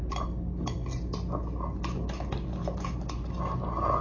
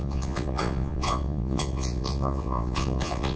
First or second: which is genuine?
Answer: first